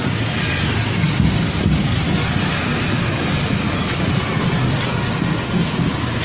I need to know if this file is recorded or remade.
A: recorded